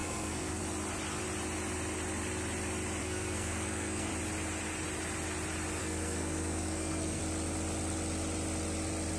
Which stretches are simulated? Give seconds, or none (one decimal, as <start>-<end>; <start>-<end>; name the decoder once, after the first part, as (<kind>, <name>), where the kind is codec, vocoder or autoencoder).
0.0-0.6 (codec, SNAC); 3.0-4.1; 5.8-7.2